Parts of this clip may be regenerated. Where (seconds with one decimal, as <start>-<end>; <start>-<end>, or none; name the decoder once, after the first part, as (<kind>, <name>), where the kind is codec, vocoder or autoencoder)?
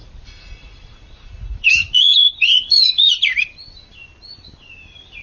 0.0-3.1 (vocoder, Vocos)